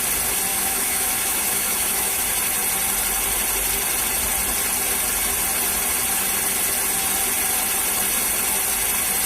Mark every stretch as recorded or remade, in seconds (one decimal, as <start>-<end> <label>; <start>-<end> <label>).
0.0-0.5 recorded; 0.5-2.2 remade; 2.2-9.3 recorded